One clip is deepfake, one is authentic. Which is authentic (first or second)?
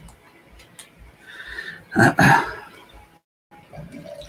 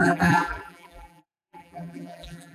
first